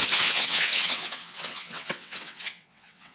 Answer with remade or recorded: remade